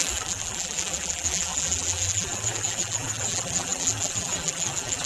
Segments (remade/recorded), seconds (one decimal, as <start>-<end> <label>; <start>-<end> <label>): 0.0-5.1 remade